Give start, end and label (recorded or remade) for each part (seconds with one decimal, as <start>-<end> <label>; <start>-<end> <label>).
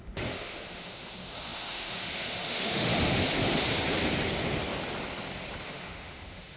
0.0-2.9 remade; 2.9-5.6 recorded; 5.6-6.6 remade